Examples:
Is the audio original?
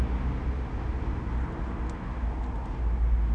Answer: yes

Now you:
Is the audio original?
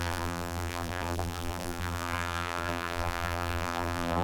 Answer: no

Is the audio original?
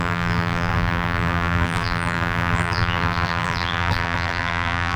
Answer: no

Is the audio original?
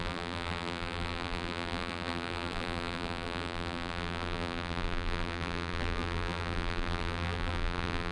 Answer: no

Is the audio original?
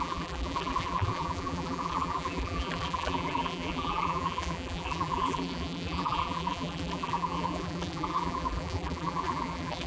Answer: no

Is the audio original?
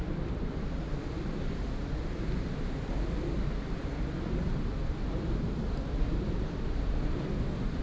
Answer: no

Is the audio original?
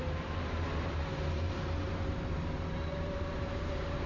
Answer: no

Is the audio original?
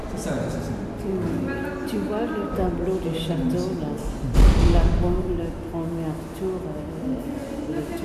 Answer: yes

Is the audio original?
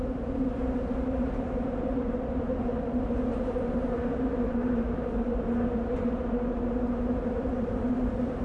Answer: no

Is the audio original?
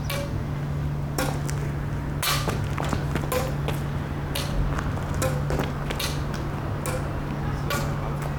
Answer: yes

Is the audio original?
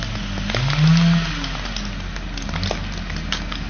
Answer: yes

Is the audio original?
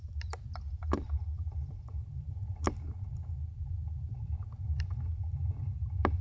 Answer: no